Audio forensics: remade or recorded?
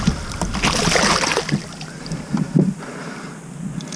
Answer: recorded